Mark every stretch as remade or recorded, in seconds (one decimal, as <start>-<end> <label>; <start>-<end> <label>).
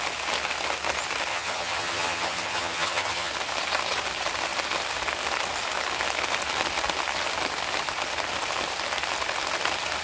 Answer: 0.0-1.3 recorded; 1.3-3.3 remade; 3.3-10.0 recorded